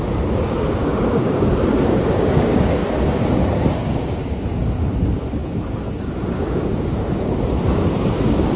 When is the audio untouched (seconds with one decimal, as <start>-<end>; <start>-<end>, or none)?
none